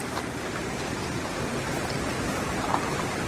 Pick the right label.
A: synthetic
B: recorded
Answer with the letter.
A